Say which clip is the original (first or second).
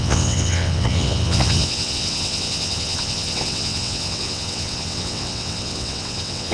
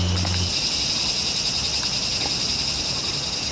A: second